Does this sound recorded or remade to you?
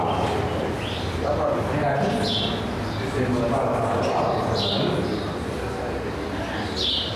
recorded